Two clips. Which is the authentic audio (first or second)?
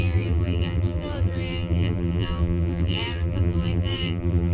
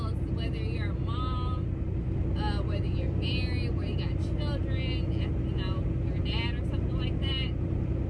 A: second